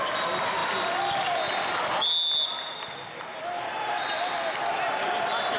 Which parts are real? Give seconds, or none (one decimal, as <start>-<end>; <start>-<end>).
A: 0.0-5.6